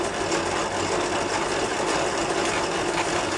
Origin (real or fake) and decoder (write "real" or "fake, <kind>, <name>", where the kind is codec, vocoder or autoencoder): real